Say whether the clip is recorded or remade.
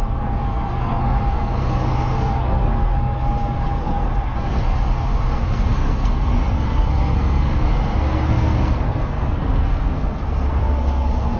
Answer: remade